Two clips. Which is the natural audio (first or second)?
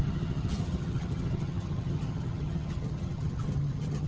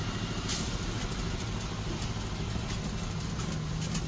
second